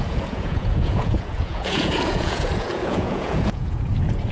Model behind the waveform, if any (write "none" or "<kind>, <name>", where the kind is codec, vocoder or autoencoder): vocoder, Vocos